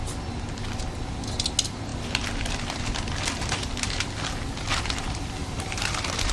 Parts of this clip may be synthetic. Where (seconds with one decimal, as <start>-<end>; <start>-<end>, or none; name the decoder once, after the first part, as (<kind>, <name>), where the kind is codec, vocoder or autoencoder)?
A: 3.4-4.0 (vocoder, BigVGAN v2); 5.4-6.3